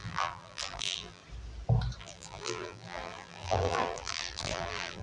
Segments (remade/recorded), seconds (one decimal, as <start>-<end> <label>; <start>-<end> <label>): 0.0-1.2 remade; 1.2-2.0 recorded; 2.0-5.0 remade